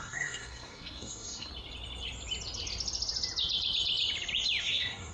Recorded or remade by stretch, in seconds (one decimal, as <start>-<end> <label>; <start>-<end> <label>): 0.0-1.5 remade; 1.5-4.6 recorded; 4.6-5.1 remade